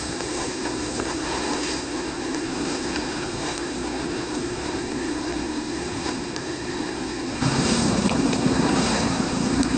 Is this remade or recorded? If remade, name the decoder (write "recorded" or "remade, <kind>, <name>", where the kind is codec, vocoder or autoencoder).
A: remade, codec, SNAC